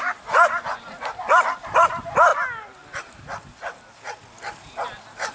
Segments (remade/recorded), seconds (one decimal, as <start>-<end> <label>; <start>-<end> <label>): 0.0-5.3 recorded